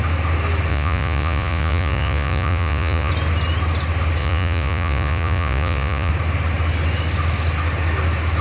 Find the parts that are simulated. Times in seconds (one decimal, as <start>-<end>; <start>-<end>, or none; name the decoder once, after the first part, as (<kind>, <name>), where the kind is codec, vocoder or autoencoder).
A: 0.7-3.1 (vocoder, Vocos); 4.2-6.1